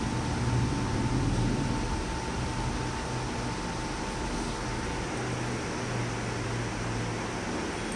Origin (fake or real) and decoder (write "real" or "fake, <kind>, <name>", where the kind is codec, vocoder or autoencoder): real